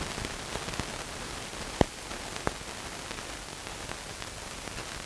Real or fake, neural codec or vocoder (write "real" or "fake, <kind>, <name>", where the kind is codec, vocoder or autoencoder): real